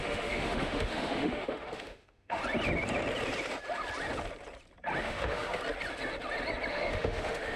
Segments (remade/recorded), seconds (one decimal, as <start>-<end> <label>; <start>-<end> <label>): 0.0-2.4 remade; 2.4-5.0 recorded; 5.0-5.6 remade; 5.6-6.7 recorded; 6.7-7.6 remade